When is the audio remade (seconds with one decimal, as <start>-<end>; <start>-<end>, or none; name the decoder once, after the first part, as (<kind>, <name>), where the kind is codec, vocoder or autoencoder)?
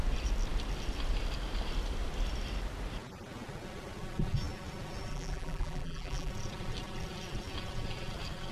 5.1-6.3 (vocoder, BigVGAN v2)